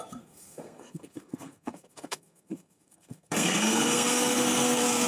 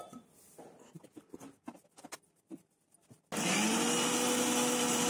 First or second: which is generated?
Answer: first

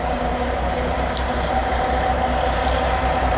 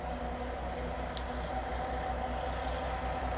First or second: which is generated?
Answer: first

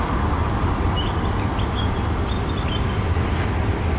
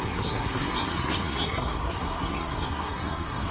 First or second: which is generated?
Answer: second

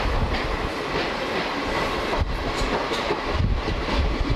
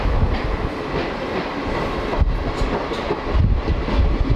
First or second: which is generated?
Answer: first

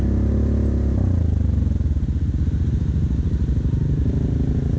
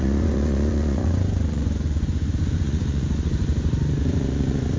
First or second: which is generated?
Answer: second